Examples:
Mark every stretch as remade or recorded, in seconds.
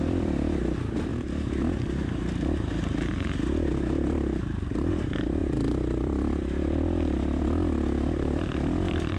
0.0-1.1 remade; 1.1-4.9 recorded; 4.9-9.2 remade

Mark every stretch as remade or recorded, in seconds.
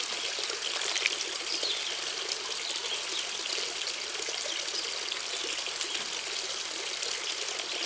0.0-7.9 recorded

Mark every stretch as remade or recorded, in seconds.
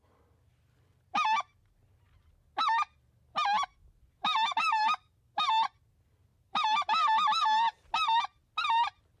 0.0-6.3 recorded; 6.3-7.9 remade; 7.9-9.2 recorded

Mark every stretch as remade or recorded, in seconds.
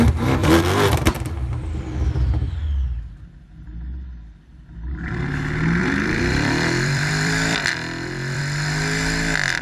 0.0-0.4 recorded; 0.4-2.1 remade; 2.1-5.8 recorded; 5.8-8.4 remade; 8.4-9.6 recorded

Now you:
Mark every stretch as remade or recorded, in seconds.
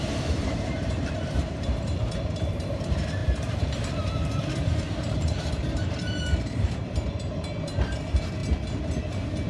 0.0-8.4 remade; 8.4-9.1 recorded; 9.1-9.5 remade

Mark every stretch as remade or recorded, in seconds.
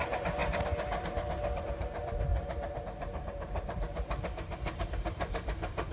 0.0-0.4 remade; 0.4-1.6 recorded; 1.6-2.3 remade; 2.3-2.8 recorded; 2.8-5.9 remade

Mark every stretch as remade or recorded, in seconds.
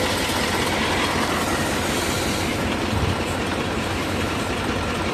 0.0-2.5 recorded; 2.5-4.5 remade; 4.5-5.1 recorded